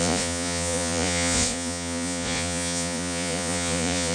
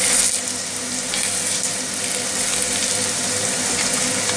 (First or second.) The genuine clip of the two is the second